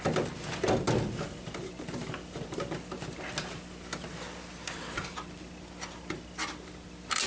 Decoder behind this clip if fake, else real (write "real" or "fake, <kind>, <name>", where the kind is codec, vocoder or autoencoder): real